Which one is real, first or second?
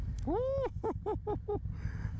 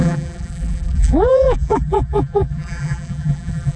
first